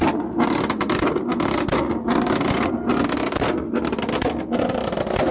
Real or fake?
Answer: real